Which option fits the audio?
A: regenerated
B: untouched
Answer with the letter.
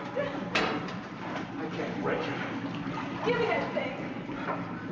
B